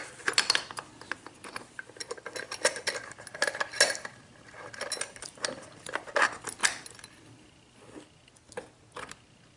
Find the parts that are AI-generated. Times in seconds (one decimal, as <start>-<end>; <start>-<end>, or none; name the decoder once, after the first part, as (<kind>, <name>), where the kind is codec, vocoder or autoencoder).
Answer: none